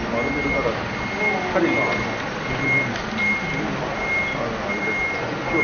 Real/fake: real